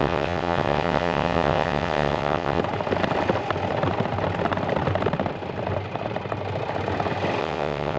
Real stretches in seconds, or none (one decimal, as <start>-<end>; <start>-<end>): 2.6-7.4